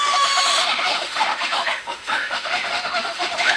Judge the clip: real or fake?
fake